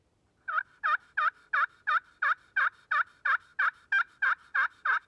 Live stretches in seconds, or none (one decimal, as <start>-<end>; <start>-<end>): 0.0-5.1

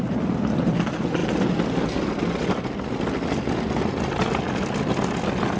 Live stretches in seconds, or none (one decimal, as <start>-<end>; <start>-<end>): 0.0-5.6

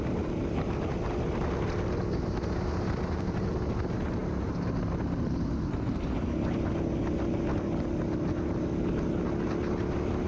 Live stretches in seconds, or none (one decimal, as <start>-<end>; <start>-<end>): 0.0-10.3

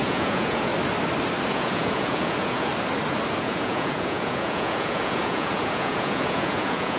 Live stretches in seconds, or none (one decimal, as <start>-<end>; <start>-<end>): 0.7-1.5; 2.7-3.3

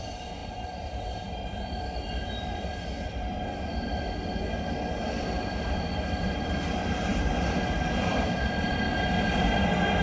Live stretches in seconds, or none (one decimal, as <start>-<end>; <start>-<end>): 0.0-10.0

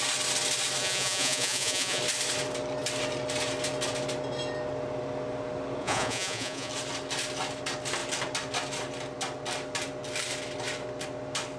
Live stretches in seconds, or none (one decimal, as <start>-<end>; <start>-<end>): 0.0-0.8; 2.0-5.8; 6.7-11.6